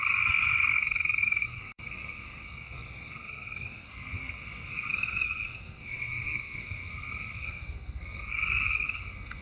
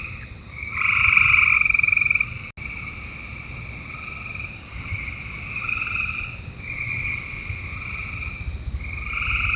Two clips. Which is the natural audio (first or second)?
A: second